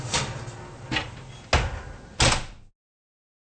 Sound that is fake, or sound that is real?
real